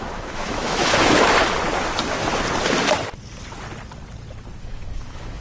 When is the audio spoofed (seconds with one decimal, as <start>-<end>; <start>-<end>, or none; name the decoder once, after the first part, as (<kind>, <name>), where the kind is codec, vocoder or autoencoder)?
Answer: 0.0-1.4 (autoencoder, DAC-VAE); 4.6-5.4

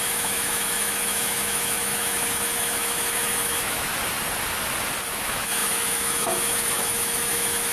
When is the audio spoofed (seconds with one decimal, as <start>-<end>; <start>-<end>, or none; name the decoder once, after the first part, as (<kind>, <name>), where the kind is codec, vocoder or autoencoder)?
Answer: 0.0-3.9 (autoencoder, DAC-VAE); 5.1-7.7

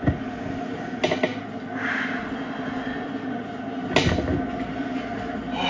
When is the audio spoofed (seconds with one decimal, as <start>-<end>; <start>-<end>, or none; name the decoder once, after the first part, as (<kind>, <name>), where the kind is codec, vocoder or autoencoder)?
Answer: none

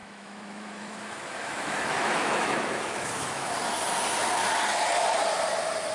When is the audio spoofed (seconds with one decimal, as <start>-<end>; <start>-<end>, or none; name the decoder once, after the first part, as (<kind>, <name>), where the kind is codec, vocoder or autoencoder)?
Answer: 0.0-3.5 (autoencoder, DAC-VAE)

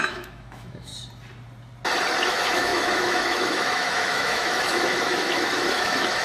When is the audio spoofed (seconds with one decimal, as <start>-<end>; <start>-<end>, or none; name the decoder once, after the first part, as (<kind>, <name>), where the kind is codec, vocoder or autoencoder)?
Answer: 0.0-0.9 (autoencoder, DAC-VAE); 2.3-6.2

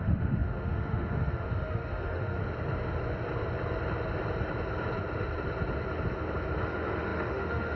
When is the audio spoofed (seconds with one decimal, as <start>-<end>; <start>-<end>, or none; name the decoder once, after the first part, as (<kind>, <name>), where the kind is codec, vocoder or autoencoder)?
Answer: 0.0-2.4 (autoencoder, DAC-VAE); 6.6-7.8